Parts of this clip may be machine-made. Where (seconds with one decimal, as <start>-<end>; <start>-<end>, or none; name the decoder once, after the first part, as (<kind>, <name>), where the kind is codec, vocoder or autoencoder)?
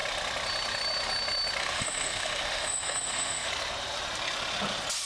1.6-3.5 (autoencoder, DAC-VAE)